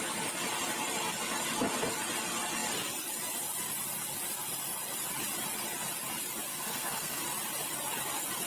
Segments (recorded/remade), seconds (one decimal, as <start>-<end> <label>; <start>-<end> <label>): 0.0-6.5 recorded; 6.5-7.2 remade; 7.2-8.5 recorded

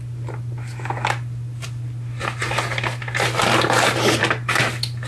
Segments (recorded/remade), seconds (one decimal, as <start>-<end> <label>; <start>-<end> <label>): 0.0-5.1 recorded

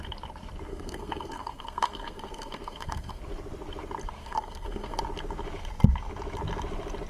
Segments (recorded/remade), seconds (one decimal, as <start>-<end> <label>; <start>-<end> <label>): 0.0-0.7 recorded; 0.7-3.2 remade; 3.2-4.2 recorded; 4.2-5.0 remade; 5.0-7.1 recorded

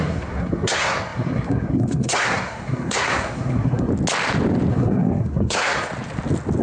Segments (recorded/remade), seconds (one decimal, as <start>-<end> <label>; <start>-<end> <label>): 0.0-3.9 remade; 3.9-4.7 recorded; 4.7-5.9 remade; 5.9-6.6 recorded

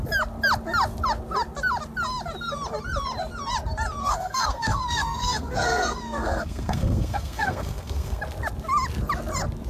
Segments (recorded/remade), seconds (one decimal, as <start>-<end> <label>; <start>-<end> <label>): 0.0-4.0 recorded; 4.0-8.2 remade; 8.2-9.7 recorded

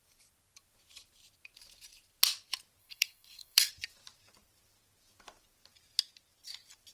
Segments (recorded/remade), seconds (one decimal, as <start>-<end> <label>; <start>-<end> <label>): 0.0-2.8 recorded; 2.8-3.7 remade; 3.7-6.9 recorded

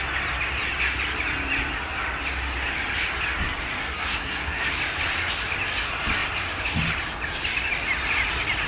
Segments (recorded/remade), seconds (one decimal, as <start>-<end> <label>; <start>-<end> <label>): 0.0-3.8 recorded; 3.8-4.7 remade; 4.7-8.7 recorded